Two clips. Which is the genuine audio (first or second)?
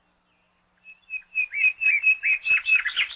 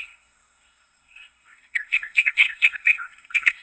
first